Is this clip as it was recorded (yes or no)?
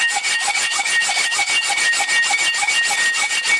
yes